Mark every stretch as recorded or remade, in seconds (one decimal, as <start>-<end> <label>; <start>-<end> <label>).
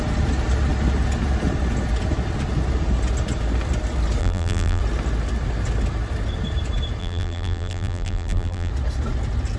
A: 0.0-4.2 recorded; 4.2-4.8 remade; 4.8-7.0 recorded; 7.0-8.7 remade; 8.7-9.6 recorded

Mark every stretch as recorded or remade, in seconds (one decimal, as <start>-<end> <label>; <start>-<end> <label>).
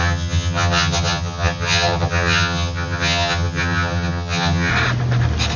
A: 0.0-4.7 remade; 4.7-5.6 recorded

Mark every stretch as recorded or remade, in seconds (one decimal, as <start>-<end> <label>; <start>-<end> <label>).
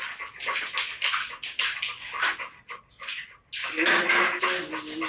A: 0.0-3.6 recorded; 3.6-4.4 remade; 4.4-5.1 recorded